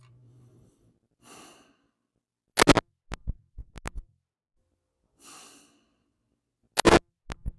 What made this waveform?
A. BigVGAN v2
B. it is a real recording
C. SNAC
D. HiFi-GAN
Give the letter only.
B